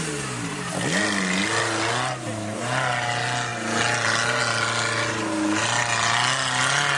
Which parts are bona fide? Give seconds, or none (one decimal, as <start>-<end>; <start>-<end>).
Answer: 0.0-7.0